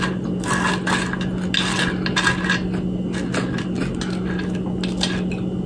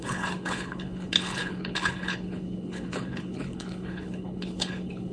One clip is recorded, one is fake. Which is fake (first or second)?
second